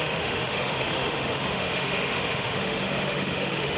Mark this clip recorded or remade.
remade